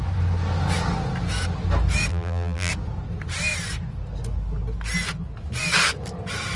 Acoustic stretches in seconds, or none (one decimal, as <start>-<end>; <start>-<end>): 0.0-2.1; 2.7-6.6